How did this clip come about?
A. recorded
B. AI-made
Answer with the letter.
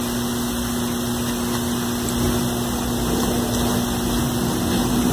A